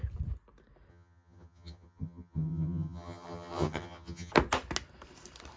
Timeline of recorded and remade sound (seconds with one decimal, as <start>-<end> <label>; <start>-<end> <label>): 0.0-0.9 recorded; 0.9-4.3 remade; 4.3-5.6 recorded